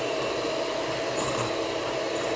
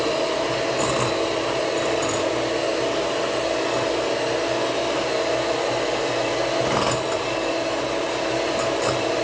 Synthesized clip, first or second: first